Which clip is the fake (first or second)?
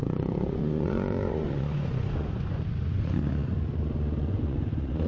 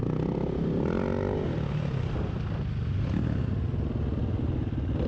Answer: first